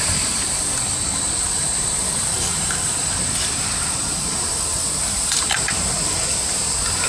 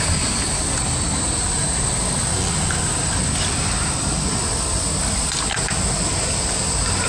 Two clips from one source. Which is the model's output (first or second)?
first